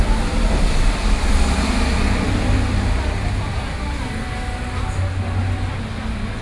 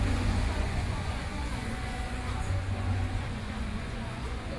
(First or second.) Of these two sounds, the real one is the first